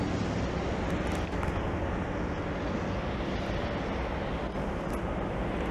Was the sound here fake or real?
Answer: real